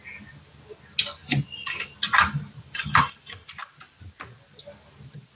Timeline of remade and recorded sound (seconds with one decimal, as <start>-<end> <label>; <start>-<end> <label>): 0.0-5.3 recorded